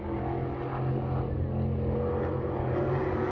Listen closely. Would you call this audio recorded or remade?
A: recorded